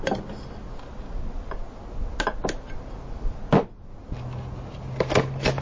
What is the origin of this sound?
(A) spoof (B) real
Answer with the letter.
B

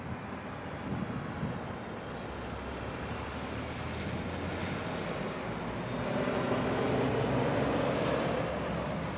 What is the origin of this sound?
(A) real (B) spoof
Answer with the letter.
A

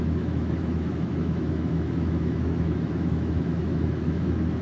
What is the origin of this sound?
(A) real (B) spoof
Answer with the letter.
B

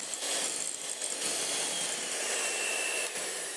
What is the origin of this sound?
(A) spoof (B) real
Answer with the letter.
B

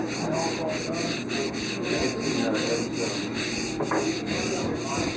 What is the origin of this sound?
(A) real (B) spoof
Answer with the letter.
A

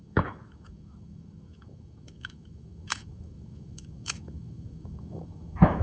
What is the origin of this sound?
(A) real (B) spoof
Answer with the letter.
B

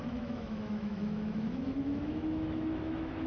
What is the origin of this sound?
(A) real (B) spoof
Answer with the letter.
B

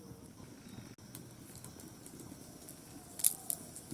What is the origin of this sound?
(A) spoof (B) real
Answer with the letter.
B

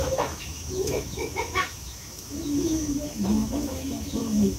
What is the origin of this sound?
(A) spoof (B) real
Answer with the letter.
A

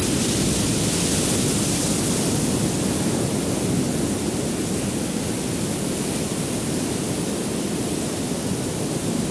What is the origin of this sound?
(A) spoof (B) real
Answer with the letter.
B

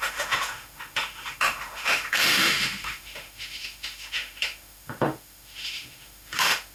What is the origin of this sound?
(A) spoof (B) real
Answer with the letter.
A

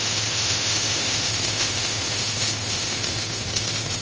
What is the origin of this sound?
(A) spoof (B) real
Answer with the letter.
A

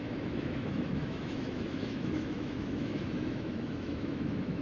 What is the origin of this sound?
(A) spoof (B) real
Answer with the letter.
A